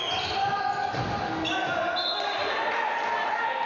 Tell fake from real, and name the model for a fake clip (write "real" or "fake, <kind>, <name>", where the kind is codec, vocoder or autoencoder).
real